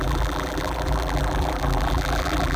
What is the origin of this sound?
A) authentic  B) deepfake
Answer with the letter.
B